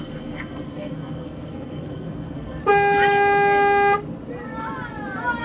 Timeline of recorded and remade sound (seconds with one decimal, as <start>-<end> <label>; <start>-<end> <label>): 0.0-2.6 remade; 2.6-5.4 recorded